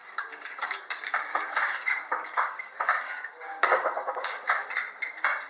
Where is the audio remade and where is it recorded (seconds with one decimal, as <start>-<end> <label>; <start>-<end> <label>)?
0.0-0.8 remade; 0.8-1.3 recorded; 1.3-4.6 remade; 4.6-5.5 recorded